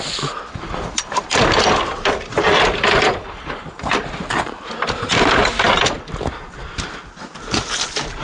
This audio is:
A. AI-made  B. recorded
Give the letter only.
B